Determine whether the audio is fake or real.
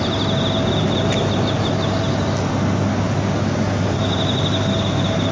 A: real